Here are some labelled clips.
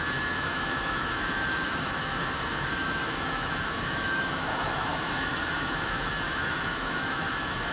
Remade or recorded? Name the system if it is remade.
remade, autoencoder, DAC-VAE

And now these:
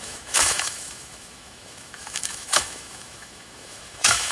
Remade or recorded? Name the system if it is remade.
remade, autoencoder, DAC-VAE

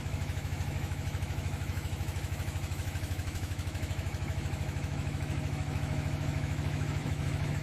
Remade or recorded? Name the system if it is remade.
remade, autoencoder, DAC-VAE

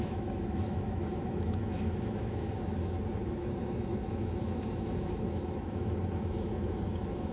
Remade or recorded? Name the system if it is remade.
remade, autoencoder, DAC-VAE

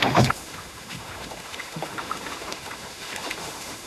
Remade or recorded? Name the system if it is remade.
remade, autoencoder, DAC-VAE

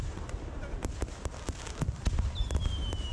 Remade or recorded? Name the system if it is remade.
recorded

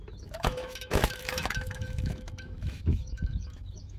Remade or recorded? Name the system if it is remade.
remade, autoencoder, DAC-VAE